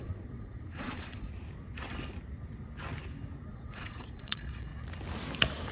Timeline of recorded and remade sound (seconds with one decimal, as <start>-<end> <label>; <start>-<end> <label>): 0.0-1.3 remade; 1.3-3.5 recorded; 3.5-4.7 remade; 4.7-5.7 recorded